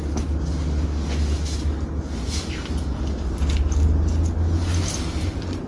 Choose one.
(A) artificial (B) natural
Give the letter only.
B